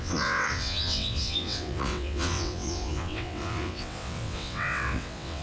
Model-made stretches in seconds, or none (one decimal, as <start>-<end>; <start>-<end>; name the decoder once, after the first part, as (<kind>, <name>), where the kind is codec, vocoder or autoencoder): 0.0-5.4 (vocoder, WaveNeXt)